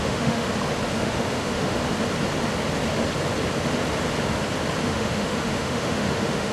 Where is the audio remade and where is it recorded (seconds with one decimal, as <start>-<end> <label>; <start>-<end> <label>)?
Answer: 0.0-0.5 remade; 0.5-1.0 recorded; 1.0-1.8 remade; 1.8-4.8 recorded; 4.8-6.5 remade